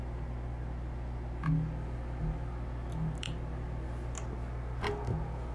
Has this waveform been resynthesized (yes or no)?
no